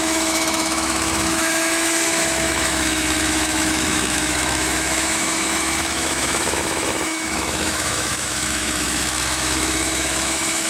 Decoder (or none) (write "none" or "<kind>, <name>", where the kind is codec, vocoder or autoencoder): autoencoder, DAC-VAE